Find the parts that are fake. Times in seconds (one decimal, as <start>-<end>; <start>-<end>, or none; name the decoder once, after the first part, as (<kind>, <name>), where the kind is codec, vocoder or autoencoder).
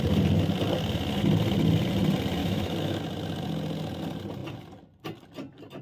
2.4-3.0 (autoencoder, DAC-VAE)